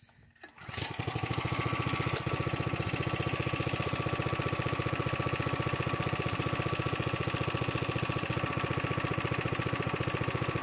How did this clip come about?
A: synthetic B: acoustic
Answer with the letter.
B